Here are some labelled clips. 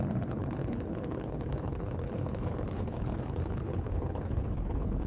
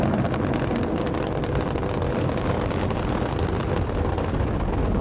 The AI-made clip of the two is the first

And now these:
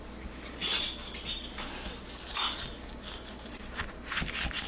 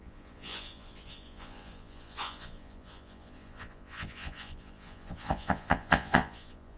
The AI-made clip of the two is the second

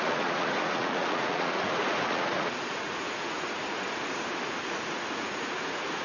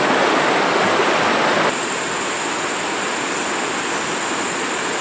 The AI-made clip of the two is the first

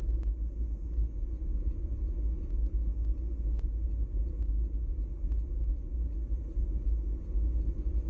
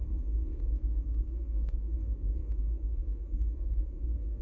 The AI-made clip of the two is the second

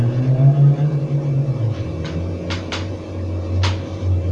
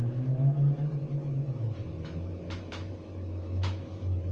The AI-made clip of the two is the second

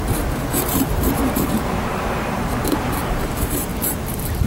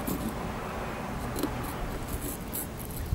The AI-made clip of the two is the first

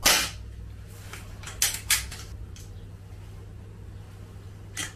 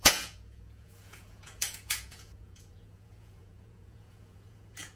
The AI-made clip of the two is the second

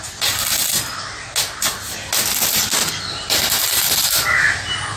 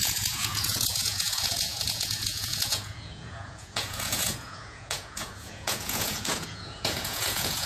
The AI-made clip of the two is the second